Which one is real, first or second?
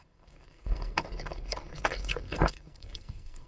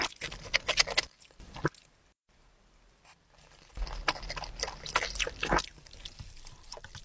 second